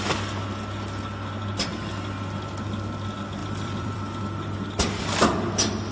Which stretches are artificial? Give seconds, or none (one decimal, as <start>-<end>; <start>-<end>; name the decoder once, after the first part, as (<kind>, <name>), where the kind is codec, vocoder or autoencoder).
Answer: 3.4-4.2 (vocoder, BigVGAN v2)